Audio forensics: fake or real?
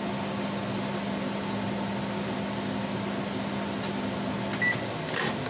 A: real